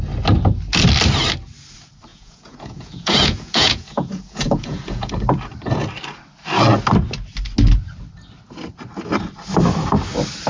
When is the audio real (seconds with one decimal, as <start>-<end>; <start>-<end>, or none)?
0.0-2.1; 5.1-10.5